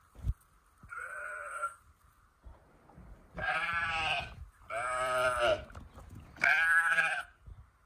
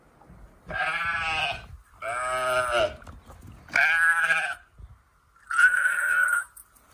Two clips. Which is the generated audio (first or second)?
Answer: first